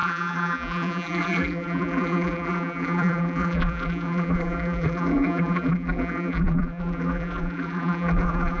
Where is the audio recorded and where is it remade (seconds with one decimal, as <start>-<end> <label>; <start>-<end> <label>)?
0.0-8.6 remade